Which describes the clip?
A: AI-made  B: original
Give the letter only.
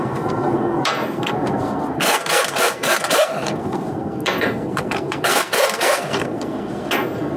A